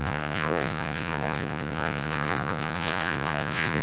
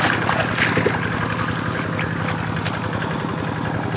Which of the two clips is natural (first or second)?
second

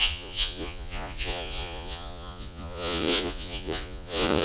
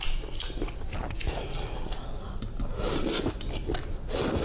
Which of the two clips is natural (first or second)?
second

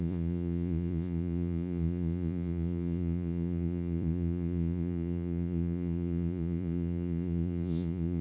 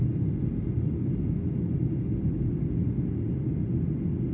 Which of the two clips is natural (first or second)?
second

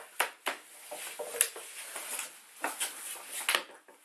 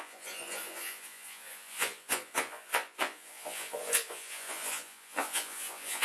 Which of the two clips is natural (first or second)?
first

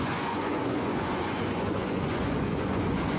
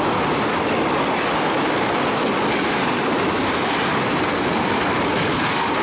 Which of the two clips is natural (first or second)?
second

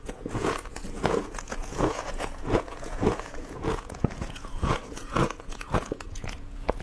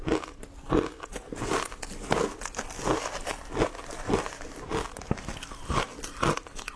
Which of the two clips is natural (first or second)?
second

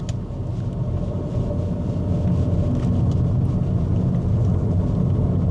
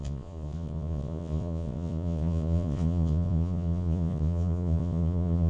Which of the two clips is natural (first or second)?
first